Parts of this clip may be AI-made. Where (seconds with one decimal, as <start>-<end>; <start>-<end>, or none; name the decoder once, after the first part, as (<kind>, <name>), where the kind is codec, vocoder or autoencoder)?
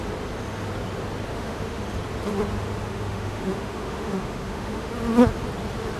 1.3-1.8 (autoencoder, DAC-VAE); 2.9-4.9